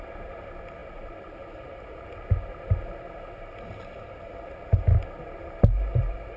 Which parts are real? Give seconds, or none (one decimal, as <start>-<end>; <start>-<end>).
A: 0.0-6.4